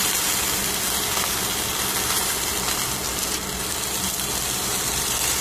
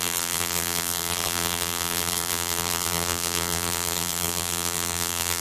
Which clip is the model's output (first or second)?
second